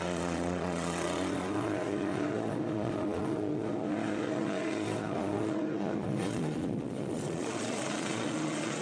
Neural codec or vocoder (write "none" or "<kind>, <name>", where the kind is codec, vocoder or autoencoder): vocoder, Vocos